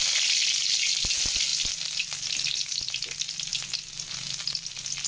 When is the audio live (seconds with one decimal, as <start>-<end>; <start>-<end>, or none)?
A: 0.0-5.1